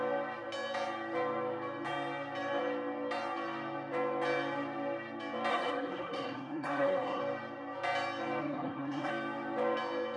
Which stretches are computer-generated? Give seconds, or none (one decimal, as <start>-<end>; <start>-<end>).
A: 5.5-7.2; 8.4-9.1